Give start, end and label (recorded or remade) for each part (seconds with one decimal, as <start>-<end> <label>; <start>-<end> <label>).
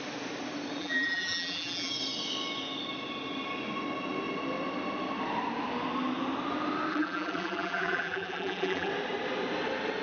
0.0-0.8 recorded; 0.8-1.9 remade; 1.9-6.9 recorded; 6.9-8.9 remade; 8.9-10.0 recorded